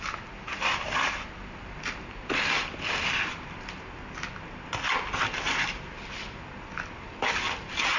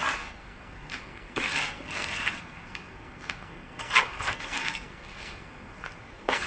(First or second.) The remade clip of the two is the second